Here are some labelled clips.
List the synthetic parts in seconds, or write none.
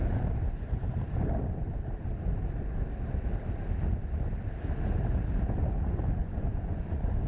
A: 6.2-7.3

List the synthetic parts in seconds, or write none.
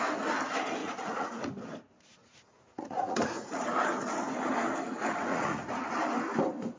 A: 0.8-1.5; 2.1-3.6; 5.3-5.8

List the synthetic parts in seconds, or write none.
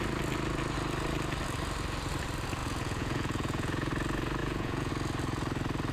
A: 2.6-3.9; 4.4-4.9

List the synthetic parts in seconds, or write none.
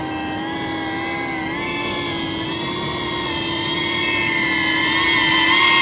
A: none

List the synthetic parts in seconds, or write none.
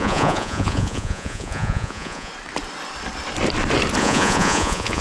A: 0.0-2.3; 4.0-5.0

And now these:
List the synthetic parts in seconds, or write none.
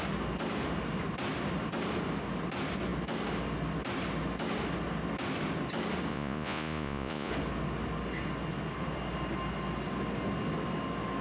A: 6.1-7.3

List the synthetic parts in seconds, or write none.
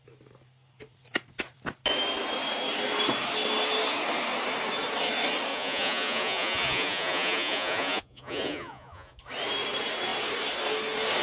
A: 5.5-9.2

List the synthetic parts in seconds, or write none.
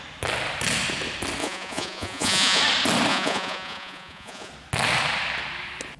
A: 1.4-2.6; 3.1-4.5